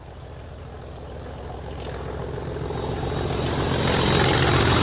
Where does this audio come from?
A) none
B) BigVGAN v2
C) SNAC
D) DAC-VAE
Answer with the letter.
A